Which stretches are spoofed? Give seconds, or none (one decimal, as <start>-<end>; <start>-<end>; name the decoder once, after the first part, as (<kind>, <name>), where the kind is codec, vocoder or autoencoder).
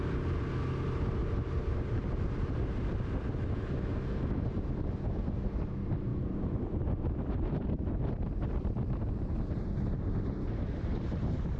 1.2-2.6 (vocoder, BigVGAN v2); 6.1-9.0